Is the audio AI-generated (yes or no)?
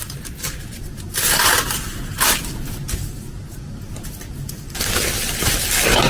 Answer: no